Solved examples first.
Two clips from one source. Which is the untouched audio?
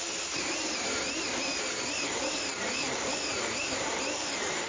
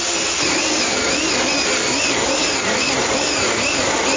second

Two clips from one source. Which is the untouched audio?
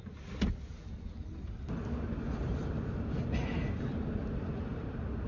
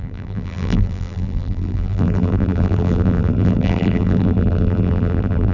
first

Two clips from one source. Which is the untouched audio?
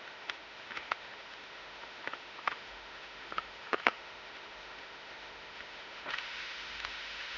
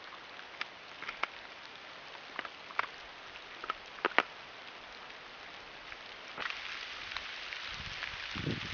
second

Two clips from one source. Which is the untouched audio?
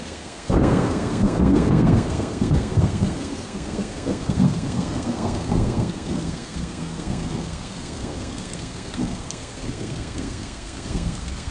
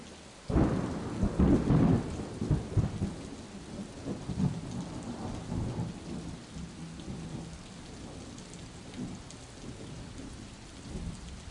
second